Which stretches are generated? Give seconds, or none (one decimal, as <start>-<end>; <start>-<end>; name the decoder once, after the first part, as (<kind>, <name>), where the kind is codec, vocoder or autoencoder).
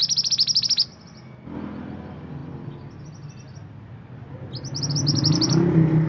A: none